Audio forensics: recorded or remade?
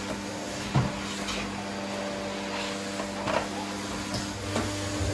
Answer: recorded